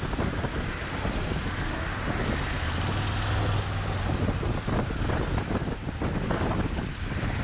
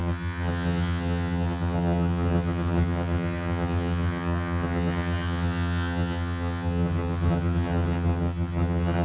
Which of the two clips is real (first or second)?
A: first